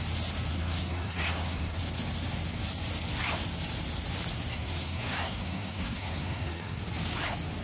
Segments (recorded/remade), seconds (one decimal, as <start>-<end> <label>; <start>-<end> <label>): 0.0-0.5 recorded; 0.5-1.8 remade; 1.8-4.5 recorded; 4.5-6.8 remade; 6.8-7.6 recorded